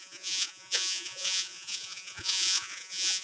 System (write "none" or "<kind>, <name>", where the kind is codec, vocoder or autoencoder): vocoder, Vocos